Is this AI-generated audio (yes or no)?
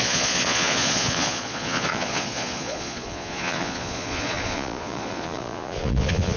yes